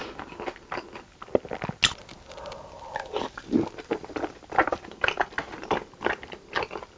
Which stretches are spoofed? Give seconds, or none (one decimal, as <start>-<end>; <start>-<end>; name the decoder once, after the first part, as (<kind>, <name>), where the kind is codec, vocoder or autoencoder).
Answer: none